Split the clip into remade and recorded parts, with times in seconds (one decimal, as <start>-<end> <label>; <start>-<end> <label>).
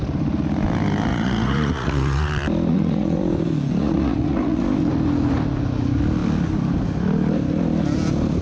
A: 0.0-1.1 recorded; 1.1-2.3 remade; 2.3-2.7 recorded; 2.7-3.2 remade; 3.2-3.8 recorded; 3.8-4.6 remade; 4.6-8.4 recorded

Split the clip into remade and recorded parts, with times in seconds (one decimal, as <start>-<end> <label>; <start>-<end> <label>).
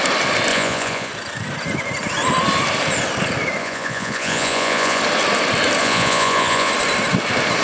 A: 0.0-0.5 recorded; 0.5-1.1 remade; 1.1-3.6 recorded; 3.6-5.0 remade; 5.0-5.8 recorded; 5.8-6.7 remade; 6.7-7.6 recorded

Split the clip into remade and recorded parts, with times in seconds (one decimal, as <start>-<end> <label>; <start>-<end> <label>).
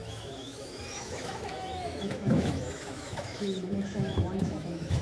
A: 0.0-5.0 remade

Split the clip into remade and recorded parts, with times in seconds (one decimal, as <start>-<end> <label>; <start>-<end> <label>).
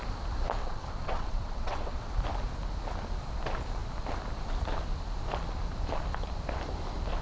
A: 0.0-0.6 recorded; 0.6-2.1 remade; 2.1-7.2 recorded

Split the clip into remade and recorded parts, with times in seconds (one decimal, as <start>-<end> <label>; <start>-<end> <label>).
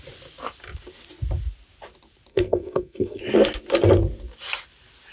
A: 0.0-2.3 recorded; 2.3-3.2 remade; 3.2-5.1 recorded